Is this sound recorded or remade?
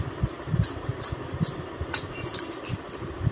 recorded